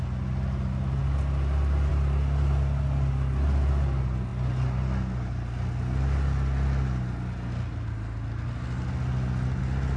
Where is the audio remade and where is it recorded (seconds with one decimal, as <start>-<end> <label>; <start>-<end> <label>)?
0.0-10.0 recorded